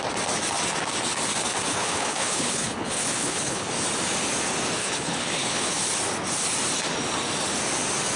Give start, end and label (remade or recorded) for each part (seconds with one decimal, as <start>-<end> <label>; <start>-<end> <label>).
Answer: 0.0-1.7 recorded; 1.7-3.7 remade; 3.7-4.8 recorded; 4.8-5.8 remade; 5.8-8.2 recorded